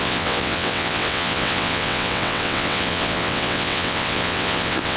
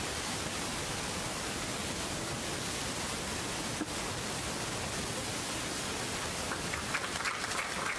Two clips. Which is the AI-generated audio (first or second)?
first